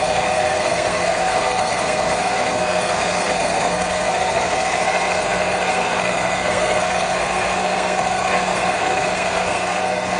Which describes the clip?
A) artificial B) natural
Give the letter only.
A